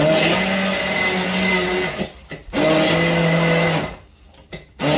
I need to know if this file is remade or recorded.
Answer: recorded